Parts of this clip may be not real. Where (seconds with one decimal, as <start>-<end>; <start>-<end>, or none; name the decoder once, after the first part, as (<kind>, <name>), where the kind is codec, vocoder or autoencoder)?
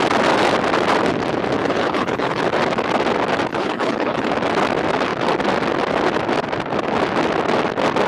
1.6-2.4 (codec, HILCodec); 3.5-4.3